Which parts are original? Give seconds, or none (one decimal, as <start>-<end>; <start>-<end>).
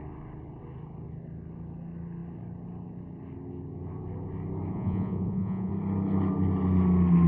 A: 0.0-4.7; 5.7-7.3